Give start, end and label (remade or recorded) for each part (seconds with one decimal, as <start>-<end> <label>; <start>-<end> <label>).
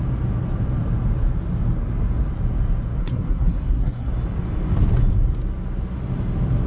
0.0-3.0 recorded; 3.0-4.1 remade; 4.1-6.7 recorded